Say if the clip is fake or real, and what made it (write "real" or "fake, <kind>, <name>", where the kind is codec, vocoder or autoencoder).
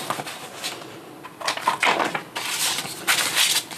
real